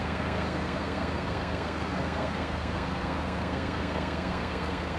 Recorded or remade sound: remade